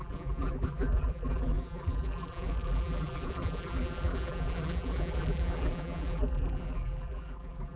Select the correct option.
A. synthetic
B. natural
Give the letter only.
A